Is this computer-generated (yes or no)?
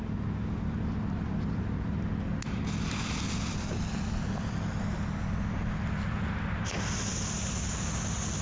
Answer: no